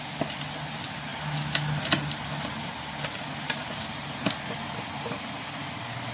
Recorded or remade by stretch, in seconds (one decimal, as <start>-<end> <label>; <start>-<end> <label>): 0.0-6.1 recorded